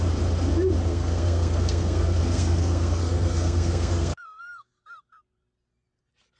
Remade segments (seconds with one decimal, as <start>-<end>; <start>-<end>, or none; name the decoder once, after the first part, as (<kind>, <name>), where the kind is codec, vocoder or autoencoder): 0.9-4.7 (codec, SNAC)